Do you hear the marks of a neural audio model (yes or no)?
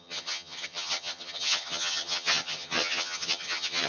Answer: yes